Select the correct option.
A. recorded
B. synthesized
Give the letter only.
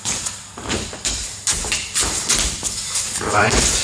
B